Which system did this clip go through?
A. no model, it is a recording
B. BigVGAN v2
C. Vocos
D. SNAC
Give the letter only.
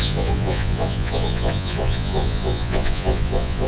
C